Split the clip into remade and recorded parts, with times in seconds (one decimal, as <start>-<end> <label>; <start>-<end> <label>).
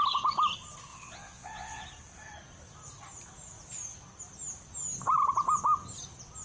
0.0-0.9 recorded; 0.9-1.8 remade; 1.8-6.4 recorded